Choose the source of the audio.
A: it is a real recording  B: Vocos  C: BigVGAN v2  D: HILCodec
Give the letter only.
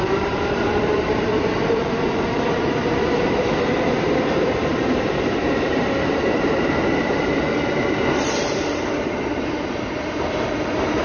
C